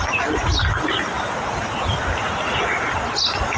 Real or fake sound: real